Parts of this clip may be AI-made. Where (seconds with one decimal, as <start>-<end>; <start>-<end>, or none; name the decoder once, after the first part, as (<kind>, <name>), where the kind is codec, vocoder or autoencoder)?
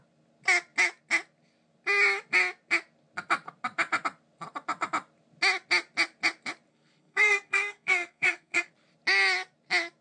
6.7-8.7 (codec, SNAC)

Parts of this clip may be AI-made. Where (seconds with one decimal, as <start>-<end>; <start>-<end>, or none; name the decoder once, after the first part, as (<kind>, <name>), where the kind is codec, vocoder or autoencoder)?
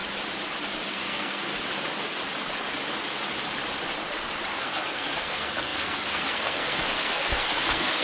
0.9-1.5 (codec, SNAC); 4.6-8.0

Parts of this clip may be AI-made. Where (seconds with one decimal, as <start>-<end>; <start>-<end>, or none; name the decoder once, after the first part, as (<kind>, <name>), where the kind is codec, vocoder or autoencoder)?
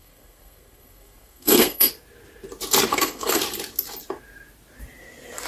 0.0-1.9 (codec, SNAC); 2.9-3.4